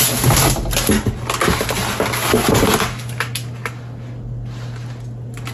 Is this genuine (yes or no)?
yes